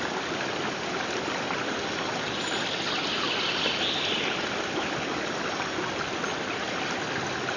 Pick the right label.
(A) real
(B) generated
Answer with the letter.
A